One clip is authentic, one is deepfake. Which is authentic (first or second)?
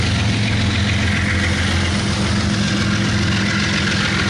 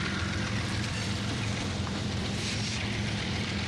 first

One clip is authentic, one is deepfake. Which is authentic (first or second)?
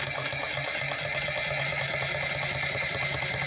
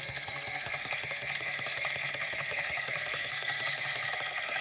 first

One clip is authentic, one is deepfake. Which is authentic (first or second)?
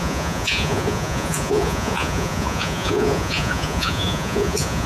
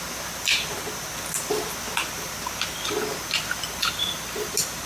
second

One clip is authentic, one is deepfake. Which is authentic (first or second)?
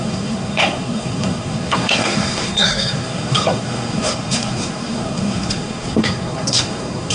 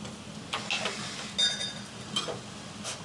second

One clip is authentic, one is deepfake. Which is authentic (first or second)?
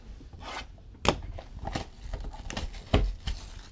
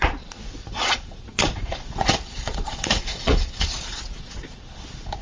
first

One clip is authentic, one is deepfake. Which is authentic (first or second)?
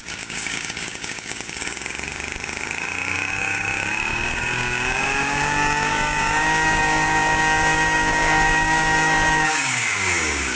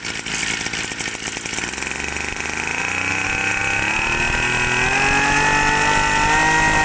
second